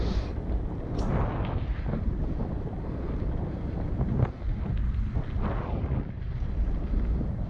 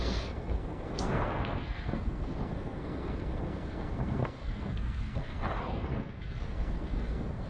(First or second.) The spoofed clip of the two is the second